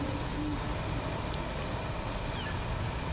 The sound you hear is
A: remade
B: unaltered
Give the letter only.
B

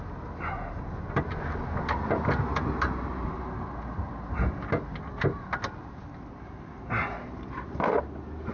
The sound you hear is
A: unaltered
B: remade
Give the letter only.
A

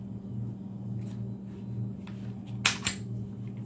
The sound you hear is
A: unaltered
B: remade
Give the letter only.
A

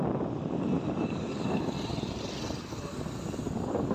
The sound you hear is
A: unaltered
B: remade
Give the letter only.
A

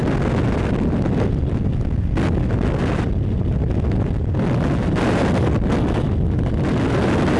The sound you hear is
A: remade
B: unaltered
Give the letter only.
B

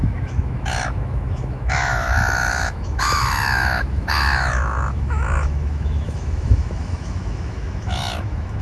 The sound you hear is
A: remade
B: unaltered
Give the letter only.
A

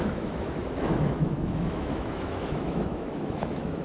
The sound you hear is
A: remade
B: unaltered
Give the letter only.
A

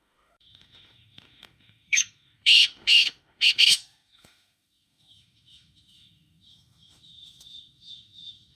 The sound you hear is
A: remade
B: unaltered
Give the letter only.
A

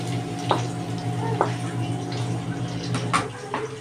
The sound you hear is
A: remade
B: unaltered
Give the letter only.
B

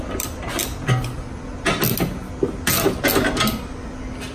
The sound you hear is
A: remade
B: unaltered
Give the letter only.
B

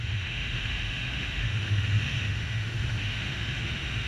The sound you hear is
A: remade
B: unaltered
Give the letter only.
A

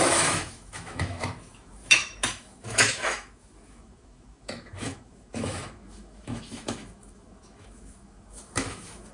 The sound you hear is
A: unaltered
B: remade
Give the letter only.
B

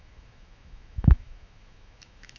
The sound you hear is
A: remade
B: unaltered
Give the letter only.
A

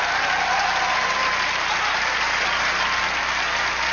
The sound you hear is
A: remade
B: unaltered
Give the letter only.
B